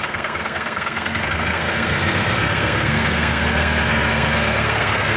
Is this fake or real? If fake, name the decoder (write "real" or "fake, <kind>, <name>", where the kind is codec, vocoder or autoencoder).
fake, codec, SNAC